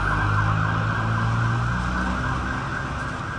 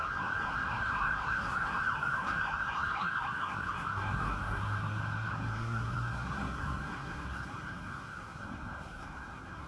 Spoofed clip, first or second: second